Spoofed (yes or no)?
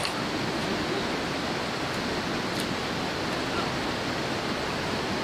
yes